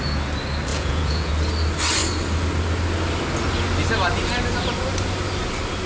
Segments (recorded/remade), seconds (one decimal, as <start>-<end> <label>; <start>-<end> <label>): 0.0-0.7 recorded; 0.7-1.3 remade; 1.3-5.9 recorded